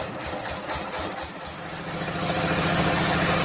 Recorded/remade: recorded